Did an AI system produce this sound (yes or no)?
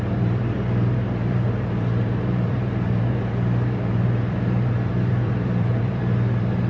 yes